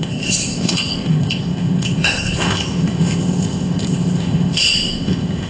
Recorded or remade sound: remade